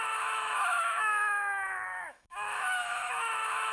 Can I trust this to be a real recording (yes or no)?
no